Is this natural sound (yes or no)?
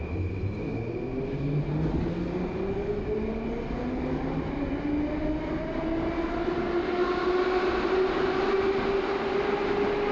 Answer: yes